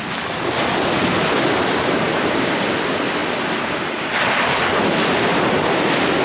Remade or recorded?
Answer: recorded